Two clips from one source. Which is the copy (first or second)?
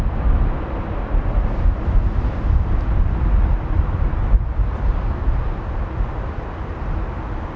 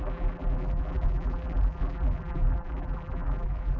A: second